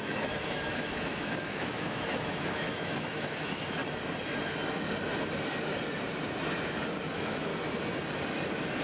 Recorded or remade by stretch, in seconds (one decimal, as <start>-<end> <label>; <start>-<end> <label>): 0.0-3.8 remade; 3.8-7.1 recorded; 7.1-7.5 remade; 7.5-8.8 recorded